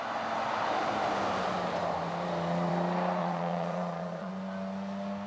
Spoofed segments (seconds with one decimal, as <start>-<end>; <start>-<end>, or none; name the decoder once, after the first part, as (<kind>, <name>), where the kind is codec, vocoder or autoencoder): 3.2-4.3 (vocoder, Vocos)